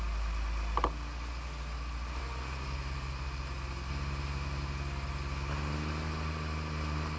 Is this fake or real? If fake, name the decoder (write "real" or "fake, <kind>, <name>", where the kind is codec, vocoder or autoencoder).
real